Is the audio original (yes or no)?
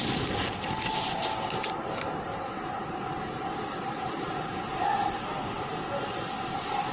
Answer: yes